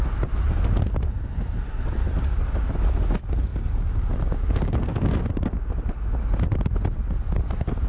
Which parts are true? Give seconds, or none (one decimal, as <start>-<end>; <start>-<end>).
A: 0.0-3.5; 5.2-7.9